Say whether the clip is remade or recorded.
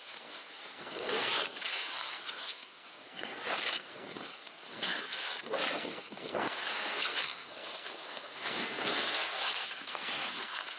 remade